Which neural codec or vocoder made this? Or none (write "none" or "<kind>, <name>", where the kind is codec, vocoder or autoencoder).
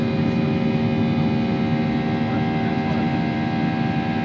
none